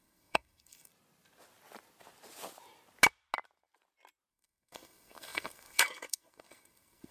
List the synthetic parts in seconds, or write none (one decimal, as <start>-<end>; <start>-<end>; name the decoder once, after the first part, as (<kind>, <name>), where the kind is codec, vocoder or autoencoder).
0.0-0.9 (codec, SNAC); 4.3-7.1